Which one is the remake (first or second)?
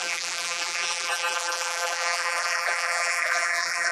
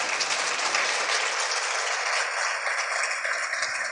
first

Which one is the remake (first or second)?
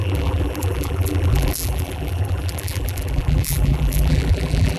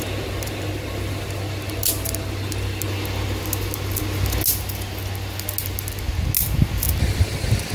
first